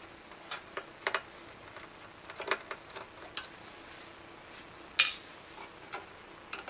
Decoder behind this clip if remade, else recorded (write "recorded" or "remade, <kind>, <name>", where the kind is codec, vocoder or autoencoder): recorded